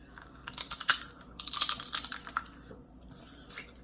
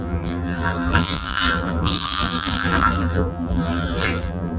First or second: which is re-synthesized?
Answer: second